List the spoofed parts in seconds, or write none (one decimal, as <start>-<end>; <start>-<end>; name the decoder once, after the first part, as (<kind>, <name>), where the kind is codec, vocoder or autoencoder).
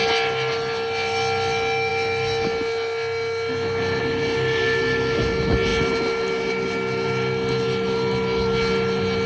none